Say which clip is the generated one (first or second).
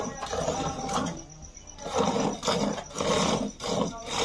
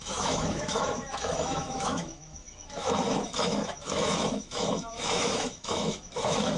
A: second